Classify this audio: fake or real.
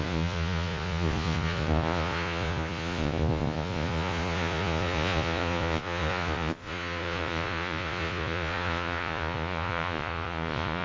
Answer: fake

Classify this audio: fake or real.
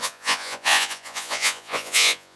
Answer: fake